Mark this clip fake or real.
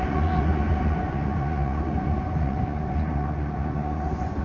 fake